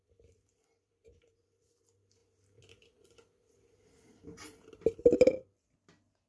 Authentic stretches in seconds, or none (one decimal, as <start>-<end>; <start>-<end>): 2.2-6.3